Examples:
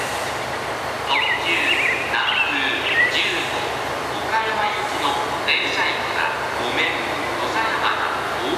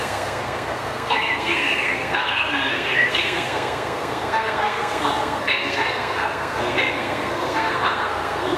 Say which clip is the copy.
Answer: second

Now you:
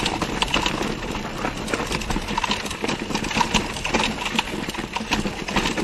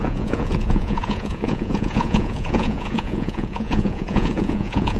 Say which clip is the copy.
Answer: second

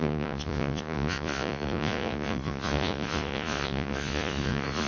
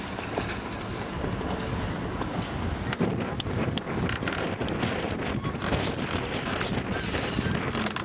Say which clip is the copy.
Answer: first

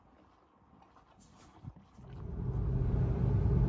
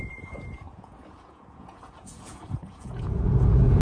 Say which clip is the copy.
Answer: second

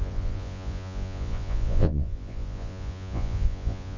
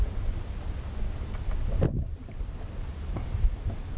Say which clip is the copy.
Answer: first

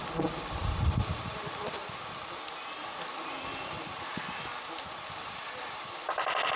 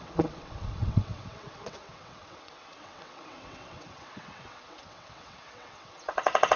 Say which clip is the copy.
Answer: second